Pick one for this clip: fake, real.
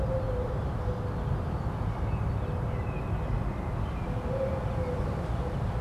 real